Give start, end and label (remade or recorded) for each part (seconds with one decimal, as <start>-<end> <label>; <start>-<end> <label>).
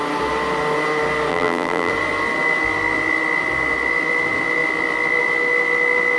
0.0-1.3 recorded; 1.3-1.9 remade; 1.9-6.2 recorded